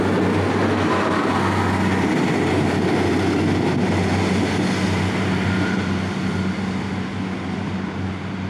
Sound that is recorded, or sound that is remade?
recorded